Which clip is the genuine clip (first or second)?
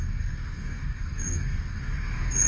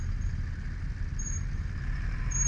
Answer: second